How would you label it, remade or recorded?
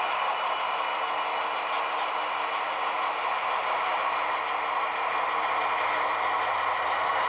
recorded